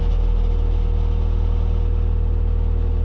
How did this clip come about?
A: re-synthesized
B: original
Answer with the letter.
B